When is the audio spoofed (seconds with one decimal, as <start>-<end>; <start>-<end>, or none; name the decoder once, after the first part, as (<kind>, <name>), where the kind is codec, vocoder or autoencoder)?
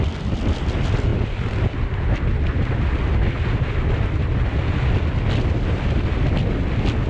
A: none